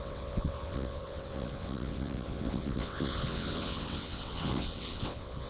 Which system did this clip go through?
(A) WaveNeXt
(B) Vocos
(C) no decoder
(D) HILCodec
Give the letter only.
A